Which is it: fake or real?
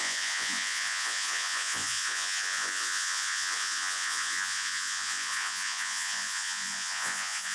fake